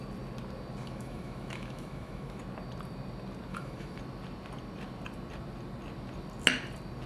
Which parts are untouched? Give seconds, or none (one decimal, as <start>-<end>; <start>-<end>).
0.0-0.8; 2.4-3.5; 4.0-7.1